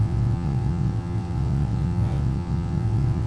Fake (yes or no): yes